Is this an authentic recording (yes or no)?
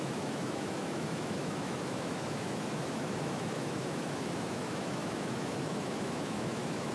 no